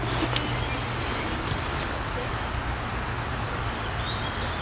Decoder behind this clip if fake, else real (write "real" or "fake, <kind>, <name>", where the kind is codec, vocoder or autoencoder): real